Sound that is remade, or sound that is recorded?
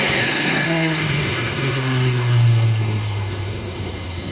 remade